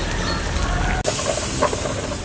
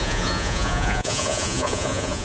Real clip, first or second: first